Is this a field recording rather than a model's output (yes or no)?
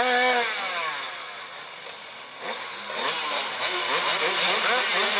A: yes